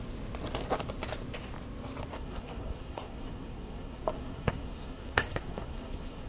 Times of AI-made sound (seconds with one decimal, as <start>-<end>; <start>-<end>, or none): 2.1-6.3